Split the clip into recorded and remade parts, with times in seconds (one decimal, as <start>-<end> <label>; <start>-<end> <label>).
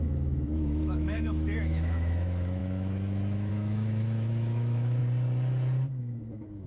0.0-5.0 remade; 5.0-6.0 recorded; 6.0-6.7 remade